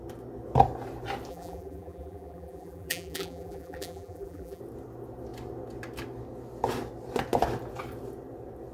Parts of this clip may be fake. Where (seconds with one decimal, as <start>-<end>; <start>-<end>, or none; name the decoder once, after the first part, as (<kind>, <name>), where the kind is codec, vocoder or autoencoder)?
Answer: 1.3-4.6 (vocoder, BigVGAN v2)